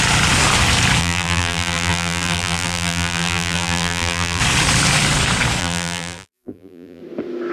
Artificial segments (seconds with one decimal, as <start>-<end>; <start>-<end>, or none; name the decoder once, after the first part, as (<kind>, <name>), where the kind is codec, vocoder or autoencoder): 1.0-4.4 (vocoder, BigVGAN v2); 5.6-7.0